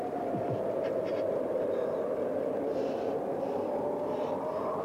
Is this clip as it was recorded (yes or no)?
yes